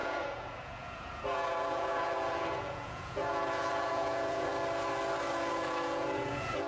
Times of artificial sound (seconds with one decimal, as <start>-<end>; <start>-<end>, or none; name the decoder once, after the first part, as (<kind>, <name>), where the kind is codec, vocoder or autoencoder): 0.0-4.5 (vocoder, Vocos); 5.5-6.7